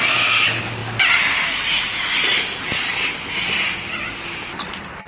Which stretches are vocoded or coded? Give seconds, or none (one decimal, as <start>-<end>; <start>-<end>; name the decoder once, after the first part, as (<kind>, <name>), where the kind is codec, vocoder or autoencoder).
none